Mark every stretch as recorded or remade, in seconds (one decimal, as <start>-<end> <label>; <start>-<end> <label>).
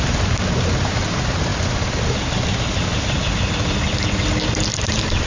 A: 0.0-5.3 recorded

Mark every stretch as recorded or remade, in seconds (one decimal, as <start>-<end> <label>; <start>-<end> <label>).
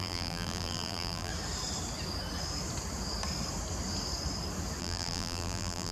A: 0.0-1.3 remade; 1.3-4.8 recorded; 4.8-5.9 remade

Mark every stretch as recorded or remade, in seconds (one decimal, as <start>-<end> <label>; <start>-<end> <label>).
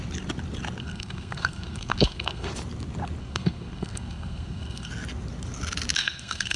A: 0.0-0.8 recorded; 0.8-2.5 remade; 2.5-3.2 recorded; 3.2-4.9 remade; 4.9-6.0 recorded; 6.0-6.6 remade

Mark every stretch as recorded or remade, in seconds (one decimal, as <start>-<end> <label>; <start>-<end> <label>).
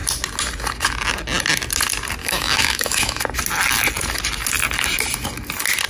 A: 0.0-2.2 recorded; 2.2-3.2 remade; 3.2-5.9 recorded